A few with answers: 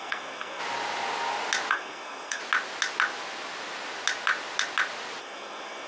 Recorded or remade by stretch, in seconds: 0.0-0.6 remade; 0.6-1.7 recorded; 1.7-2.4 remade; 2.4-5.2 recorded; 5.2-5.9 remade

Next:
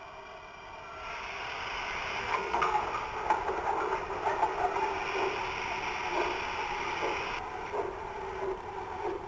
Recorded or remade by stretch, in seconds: 0.0-2.2 recorded; 2.2-2.8 remade; 2.8-9.3 recorded

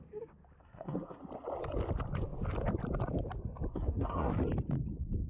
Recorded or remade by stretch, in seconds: 0.0-0.6 recorded; 0.6-1.2 remade; 1.2-3.7 recorded; 3.7-4.3 remade; 4.3-5.3 recorded

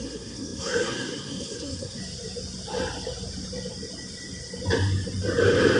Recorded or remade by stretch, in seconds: 0.0-2.0 remade; 2.0-5.8 recorded

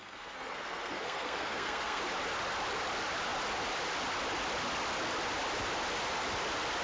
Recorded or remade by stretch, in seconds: 0.0-2.0 remade; 2.0-6.8 recorded